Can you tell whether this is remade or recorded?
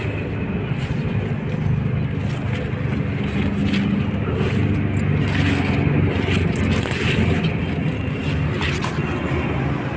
recorded